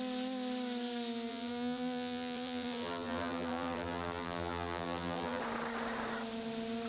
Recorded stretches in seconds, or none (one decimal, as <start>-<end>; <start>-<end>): 0.0-1.3; 5.4-6.9